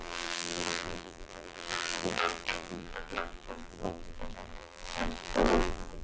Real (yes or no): no